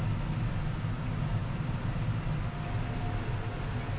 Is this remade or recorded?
recorded